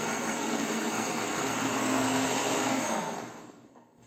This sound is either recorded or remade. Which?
remade